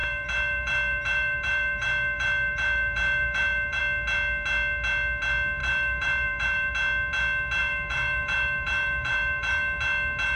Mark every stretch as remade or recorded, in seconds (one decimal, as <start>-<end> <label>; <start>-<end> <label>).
0.0-3.8 remade; 3.8-5.6 recorded; 5.6-6.7 remade; 6.7-7.6 recorded; 7.6-9.6 remade; 9.6-10.4 recorded